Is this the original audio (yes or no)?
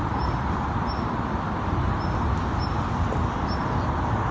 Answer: yes